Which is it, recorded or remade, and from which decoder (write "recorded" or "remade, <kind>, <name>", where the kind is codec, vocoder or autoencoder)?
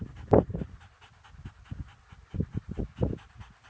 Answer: recorded